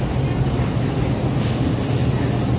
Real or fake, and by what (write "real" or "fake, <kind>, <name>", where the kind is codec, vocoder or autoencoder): real